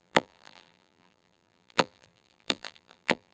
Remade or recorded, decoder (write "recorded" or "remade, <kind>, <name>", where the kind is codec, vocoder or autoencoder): remade, vocoder, BigVGAN v2